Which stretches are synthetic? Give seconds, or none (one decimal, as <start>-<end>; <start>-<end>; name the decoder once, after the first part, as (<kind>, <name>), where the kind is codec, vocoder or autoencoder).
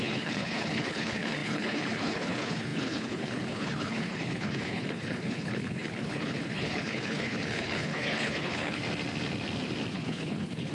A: 0.0-8.8 (codec, HILCodec); 9.9-10.7